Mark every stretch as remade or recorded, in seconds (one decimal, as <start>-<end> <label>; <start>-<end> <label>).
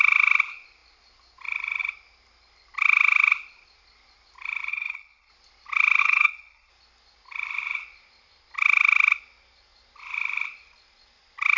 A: 0.0-4.7 recorded; 4.7-5.3 remade; 5.3-6.0 recorded; 6.0-6.7 remade; 6.7-11.6 recorded